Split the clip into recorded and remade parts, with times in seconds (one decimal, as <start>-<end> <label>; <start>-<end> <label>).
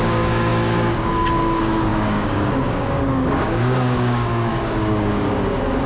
0.0-5.9 remade